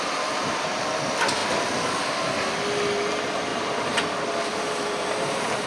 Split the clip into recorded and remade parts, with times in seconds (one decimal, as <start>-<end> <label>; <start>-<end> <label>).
0.0-3.5 recorded; 3.5-4.0 remade; 4.0-4.5 recorded; 4.5-5.7 remade